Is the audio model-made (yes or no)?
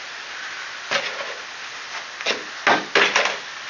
no